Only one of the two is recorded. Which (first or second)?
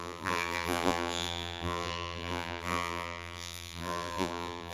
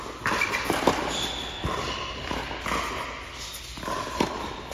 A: second